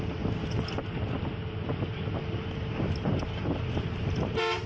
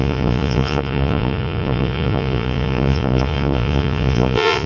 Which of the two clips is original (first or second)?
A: first